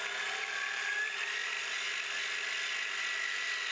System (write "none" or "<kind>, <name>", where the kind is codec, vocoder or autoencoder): none